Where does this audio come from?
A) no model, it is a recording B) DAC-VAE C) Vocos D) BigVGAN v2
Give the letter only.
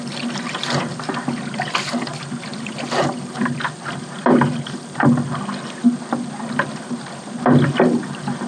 A